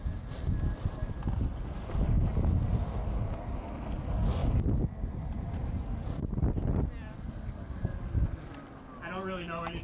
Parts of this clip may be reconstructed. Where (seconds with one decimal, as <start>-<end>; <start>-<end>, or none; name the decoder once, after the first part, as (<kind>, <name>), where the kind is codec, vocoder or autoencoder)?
none